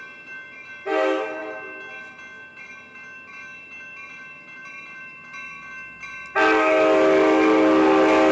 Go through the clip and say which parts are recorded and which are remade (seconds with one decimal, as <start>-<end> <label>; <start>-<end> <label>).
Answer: 0.0-8.3 recorded